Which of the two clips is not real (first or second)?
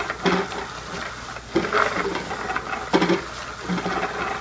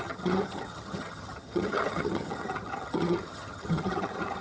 second